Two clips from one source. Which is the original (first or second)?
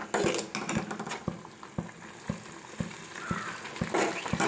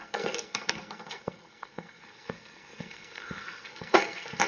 first